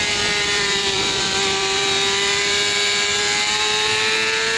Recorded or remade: remade